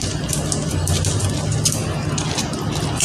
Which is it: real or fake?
real